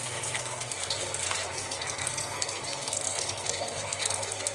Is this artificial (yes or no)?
yes